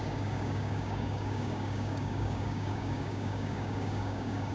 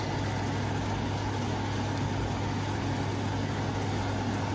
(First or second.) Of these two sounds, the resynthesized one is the first